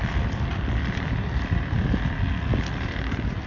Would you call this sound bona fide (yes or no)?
yes